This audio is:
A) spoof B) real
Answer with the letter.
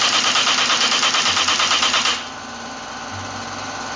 B